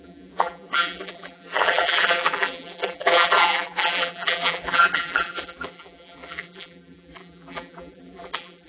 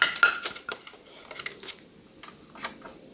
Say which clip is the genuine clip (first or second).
second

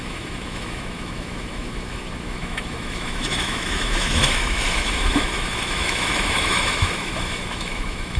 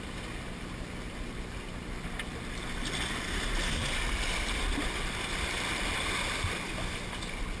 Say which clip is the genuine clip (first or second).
second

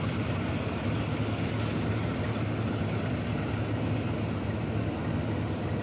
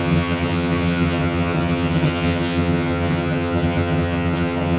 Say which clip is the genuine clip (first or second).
first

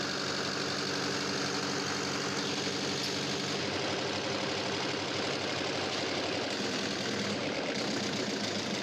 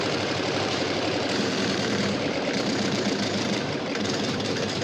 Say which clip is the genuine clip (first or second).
first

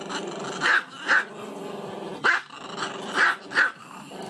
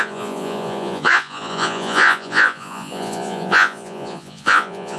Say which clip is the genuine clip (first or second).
first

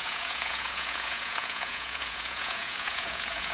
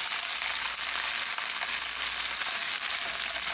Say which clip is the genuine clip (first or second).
second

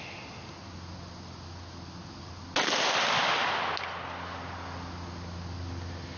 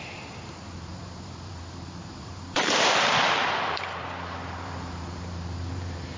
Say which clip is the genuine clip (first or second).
first